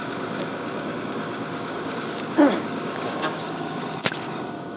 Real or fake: fake